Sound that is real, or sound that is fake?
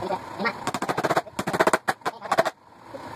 real